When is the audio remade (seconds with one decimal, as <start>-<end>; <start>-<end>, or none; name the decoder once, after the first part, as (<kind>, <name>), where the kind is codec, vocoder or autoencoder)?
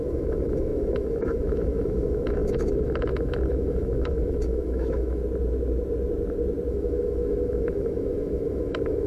0.0-5.2 (autoencoder, DAC-VAE); 6.7-9.1